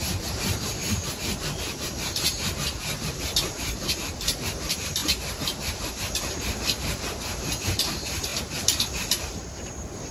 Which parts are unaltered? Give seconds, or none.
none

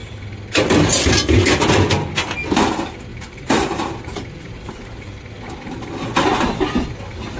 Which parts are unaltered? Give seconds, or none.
0.0-3.1; 5.2-7.4